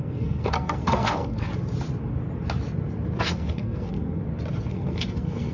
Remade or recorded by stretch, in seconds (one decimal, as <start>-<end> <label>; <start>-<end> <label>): 0.0-1.5 remade; 1.5-3.2 recorded; 3.2-4.2 remade; 4.2-4.7 recorded; 4.7-5.5 remade